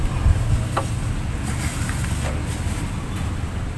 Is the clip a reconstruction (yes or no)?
no